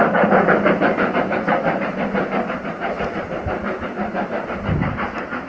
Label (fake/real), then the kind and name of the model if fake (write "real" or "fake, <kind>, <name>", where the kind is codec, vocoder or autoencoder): fake, vocoder, BigVGAN v2